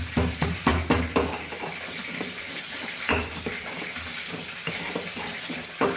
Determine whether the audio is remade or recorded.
recorded